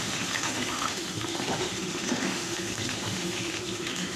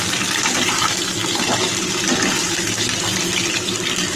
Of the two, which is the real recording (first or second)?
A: second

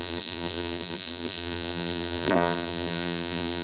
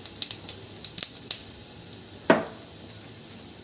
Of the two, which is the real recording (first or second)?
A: second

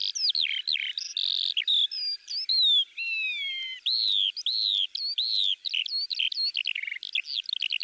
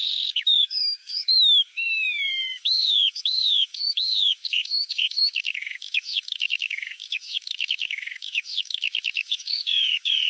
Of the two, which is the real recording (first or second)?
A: first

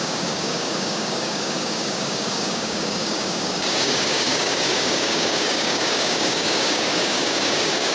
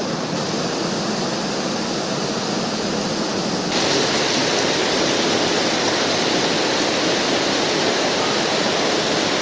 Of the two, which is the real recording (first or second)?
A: second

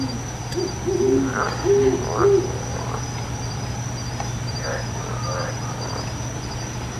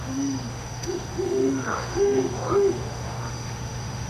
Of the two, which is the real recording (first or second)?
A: first